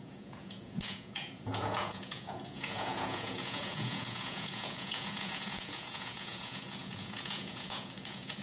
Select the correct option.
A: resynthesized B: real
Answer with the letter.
A